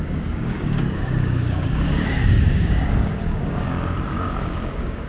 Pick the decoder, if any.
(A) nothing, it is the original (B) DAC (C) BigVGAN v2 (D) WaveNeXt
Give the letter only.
B